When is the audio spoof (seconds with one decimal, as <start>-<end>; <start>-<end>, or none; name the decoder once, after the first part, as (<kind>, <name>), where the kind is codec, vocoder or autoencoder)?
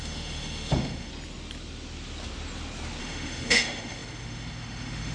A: 0.0-1.1 (autoencoder, DAC-VAE); 3.0-5.1